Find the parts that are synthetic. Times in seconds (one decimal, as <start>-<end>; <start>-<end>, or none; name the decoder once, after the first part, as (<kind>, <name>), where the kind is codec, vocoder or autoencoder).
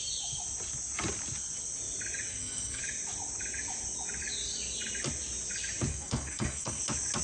2.3-2.8 (codec, SNAC); 5.9-6.8